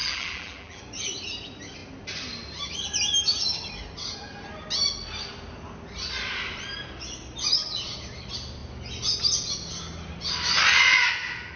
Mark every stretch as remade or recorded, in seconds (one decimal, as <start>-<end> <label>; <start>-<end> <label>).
0.0-0.8 remade; 0.8-11.6 recorded